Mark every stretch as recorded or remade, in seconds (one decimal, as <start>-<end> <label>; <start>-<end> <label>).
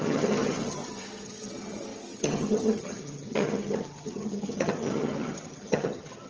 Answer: 0.0-6.3 remade